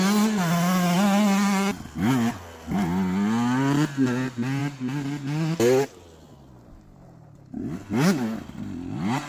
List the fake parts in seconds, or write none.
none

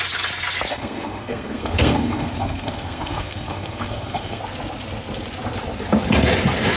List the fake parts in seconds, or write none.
0.7-4.4 (codec, SNAC)

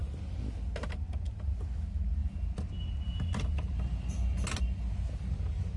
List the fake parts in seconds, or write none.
none

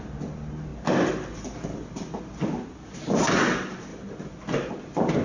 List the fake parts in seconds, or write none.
none

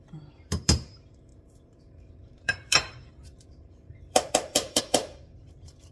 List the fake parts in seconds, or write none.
0.0-5.9 (vocoder, BigVGAN v2)